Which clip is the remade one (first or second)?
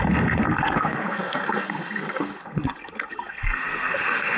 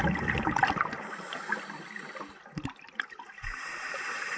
first